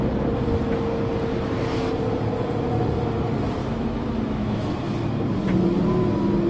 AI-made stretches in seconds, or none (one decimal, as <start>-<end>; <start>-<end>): 3.6-4.7